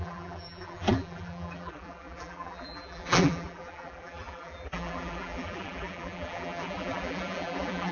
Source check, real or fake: fake